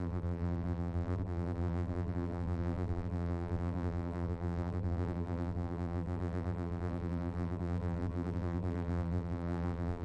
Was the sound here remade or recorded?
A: remade